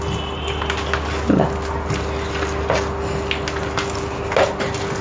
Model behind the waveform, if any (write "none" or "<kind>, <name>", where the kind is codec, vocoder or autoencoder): none